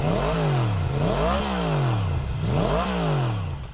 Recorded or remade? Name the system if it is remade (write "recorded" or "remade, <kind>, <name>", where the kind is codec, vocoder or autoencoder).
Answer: recorded